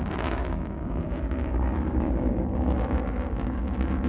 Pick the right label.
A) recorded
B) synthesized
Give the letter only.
B